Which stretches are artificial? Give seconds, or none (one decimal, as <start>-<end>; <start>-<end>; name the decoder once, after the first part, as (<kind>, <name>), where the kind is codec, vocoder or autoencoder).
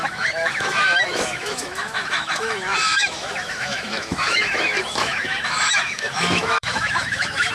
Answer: 0.0-7.5 (autoencoder, DAC-VAE)